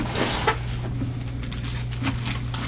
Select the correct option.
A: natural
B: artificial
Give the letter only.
A